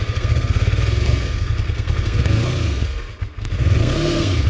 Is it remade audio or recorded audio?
remade